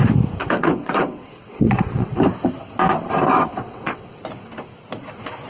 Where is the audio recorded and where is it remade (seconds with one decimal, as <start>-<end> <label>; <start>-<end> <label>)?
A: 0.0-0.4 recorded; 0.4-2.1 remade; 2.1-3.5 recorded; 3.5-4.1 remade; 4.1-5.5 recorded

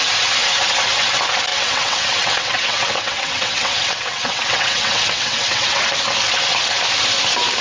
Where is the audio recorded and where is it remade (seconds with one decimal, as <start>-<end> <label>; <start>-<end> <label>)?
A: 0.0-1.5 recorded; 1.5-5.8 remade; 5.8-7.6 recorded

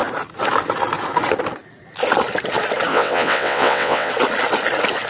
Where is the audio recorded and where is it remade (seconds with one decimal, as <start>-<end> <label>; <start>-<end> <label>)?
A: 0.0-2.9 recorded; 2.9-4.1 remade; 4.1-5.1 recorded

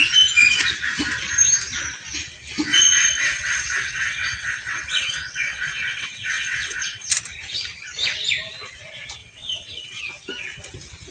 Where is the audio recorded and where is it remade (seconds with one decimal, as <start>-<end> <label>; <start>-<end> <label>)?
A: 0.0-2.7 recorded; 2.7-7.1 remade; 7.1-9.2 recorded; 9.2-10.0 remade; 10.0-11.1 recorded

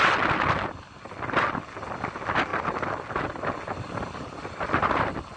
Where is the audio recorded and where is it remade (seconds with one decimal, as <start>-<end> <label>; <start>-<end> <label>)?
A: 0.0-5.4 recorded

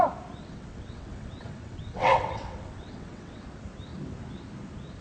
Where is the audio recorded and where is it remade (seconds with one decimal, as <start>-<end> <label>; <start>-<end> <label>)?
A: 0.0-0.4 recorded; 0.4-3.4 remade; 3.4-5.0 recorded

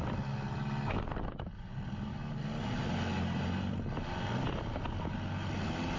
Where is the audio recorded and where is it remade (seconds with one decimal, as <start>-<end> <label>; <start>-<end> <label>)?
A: 0.0-6.0 recorded

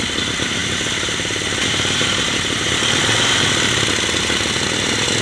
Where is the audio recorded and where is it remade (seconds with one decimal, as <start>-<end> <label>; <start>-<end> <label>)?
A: 0.0-5.2 recorded